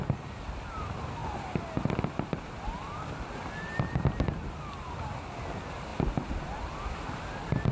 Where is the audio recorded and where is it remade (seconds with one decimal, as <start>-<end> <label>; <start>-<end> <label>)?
0.0-1.2 recorded; 1.2-4.5 remade; 4.5-5.9 recorded; 5.9-7.7 remade